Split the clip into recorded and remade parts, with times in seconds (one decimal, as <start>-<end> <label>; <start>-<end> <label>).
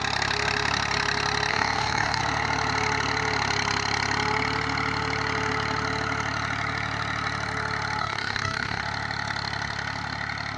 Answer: 0.0-1.5 recorded; 1.5-2.2 remade; 2.2-8.0 recorded; 8.0-8.8 remade; 8.8-10.6 recorded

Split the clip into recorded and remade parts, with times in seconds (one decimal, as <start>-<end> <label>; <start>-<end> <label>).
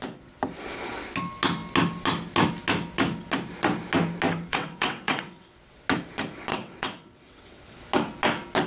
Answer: 0.0-4.5 recorded; 4.5-5.6 remade; 5.6-6.5 recorded; 6.5-7.8 remade; 7.8-8.7 recorded